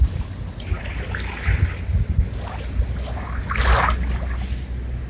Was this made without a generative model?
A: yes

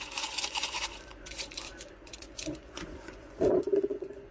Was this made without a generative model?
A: no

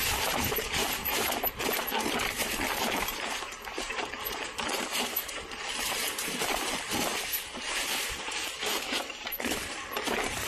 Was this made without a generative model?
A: no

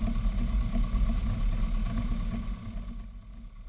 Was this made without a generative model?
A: yes